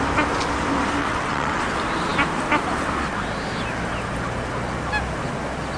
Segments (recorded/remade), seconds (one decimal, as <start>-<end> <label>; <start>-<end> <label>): 0.0-1.0 recorded; 1.0-1.6 remade; 1.6-5.8 recorded